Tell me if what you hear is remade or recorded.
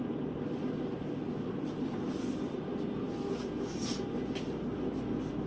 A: remade